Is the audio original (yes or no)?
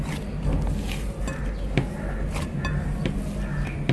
yes